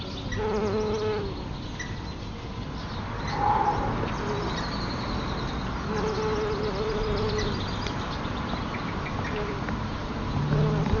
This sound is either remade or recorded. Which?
recorded